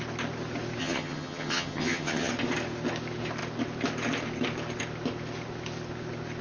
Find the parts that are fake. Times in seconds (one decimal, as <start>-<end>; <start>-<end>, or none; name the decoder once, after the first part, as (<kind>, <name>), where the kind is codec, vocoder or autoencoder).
0.8-2.3 (vocoder, HiFi-GAN)